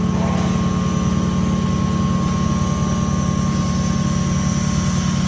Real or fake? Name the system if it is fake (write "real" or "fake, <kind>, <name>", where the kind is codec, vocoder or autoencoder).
real